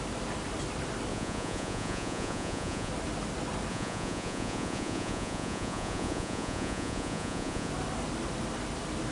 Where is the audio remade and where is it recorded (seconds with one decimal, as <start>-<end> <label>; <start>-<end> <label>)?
0.0-1.1 recorded; 1.1-2.9 remade; 2.9-3.7 recorded; 3.7-7.7 remade; 7.7-9.1 recorded